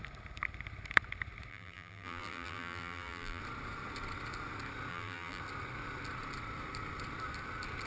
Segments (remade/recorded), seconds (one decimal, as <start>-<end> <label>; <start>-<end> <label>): 0.0-1.5 recorded; 1.5-3.4 remade; 3.4-4.9 recorded; 4.9-5.4 remade; 5.4-7.9 recorded